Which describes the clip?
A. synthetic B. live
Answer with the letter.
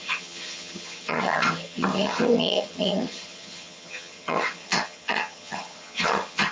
A